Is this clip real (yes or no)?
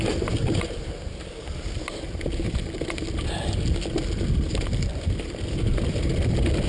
yes